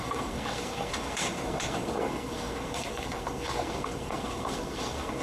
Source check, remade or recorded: remade